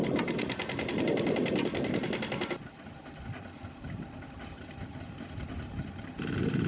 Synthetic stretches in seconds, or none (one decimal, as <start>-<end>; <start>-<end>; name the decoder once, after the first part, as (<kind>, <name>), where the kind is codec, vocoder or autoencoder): none